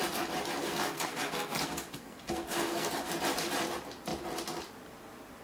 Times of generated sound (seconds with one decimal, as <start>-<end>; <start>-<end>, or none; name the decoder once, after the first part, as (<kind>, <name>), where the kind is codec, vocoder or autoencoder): 0.6-3.1 (codec, SNAC)